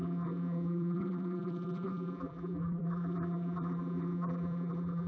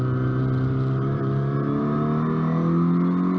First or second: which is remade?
first